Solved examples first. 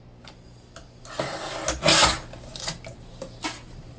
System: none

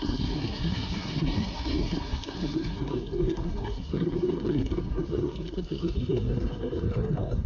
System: codec, SNAC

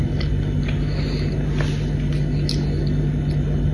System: none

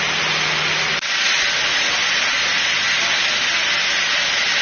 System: none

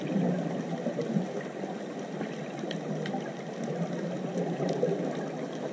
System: none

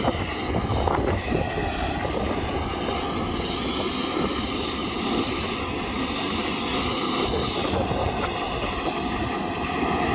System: none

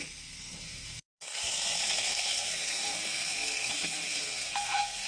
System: codec, SNAC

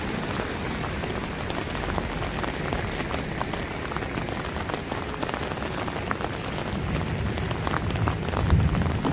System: none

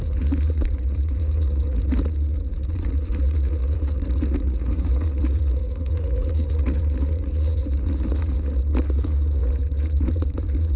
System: vocoder, Vocos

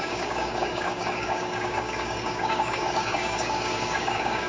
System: codec, DAC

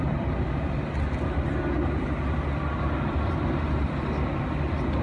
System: none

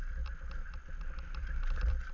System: none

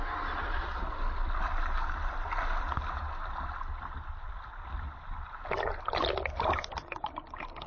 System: none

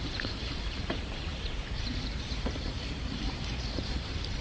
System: vocoder, BigVGAN v2